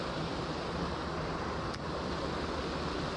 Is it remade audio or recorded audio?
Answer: recorded